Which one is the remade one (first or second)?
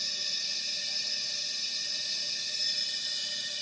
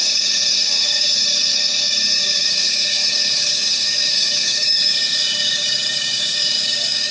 second